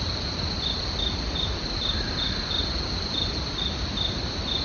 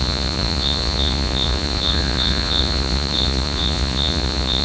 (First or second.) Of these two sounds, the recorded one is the first